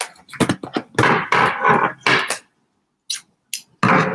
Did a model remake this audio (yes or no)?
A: no